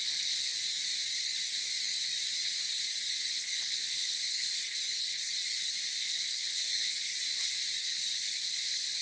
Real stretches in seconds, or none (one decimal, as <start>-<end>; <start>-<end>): 0.5-3.3; 4.6-6.0; 7.1-7.8